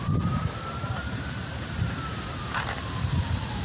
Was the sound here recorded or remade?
remade